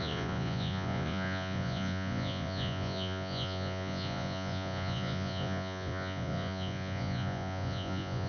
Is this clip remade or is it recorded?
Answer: remade